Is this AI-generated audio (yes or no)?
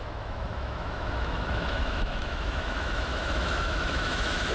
yes